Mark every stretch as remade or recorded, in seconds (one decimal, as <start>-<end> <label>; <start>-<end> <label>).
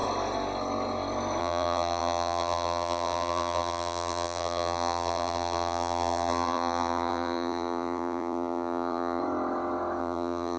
0.0-1.4 recorded; 1.4-9.2 remade; 9.2-10.0 recorded; 10.0-10.6 remade